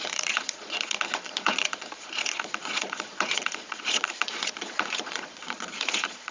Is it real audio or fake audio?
fake